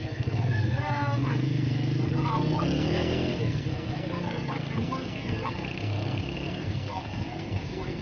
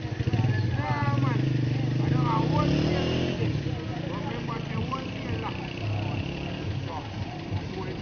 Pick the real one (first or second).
second